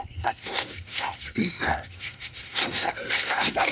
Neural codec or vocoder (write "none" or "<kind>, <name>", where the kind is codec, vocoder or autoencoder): codec, SNAC